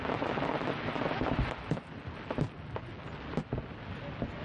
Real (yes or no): yes